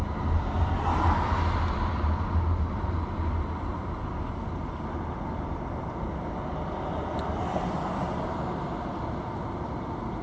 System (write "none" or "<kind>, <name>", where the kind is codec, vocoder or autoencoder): none